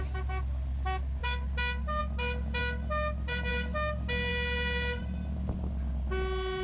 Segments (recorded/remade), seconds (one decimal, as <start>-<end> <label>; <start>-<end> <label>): 0.0-6.6 recorded